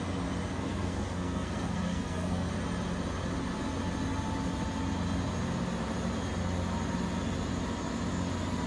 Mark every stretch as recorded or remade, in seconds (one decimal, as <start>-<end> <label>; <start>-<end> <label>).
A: 0.0-0.5 recorded; 0.5-2.5 remade; 2.5-8.7 recorded